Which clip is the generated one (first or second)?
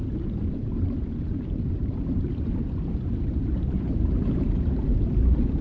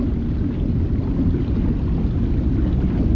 first